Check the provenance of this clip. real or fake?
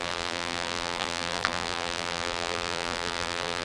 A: fake